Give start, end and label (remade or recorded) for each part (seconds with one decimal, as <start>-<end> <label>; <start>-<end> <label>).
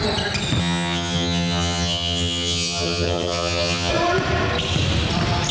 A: 0.0-0.6 recorded; 0.6-3.9 remade; 3.9-5.5 recorded